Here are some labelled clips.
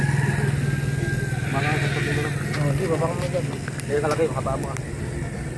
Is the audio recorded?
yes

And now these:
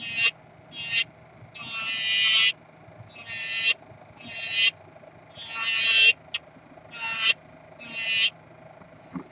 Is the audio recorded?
yes